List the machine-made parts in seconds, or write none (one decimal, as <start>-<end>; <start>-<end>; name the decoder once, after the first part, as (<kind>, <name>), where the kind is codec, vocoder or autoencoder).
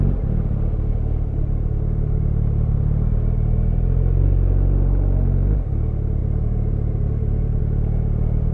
6.2-7.6 (vocoder, BigVGAN v2)